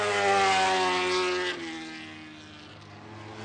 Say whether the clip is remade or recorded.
recorded